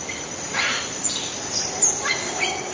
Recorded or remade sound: recorded